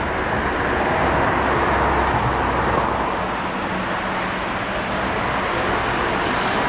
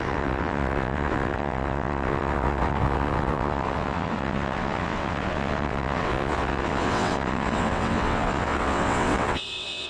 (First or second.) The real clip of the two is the first